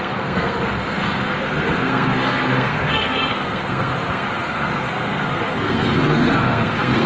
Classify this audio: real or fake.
fake